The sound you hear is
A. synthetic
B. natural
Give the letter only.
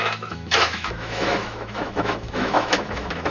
A